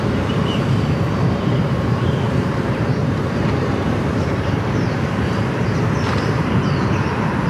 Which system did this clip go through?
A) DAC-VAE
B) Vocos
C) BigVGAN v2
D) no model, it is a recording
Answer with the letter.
C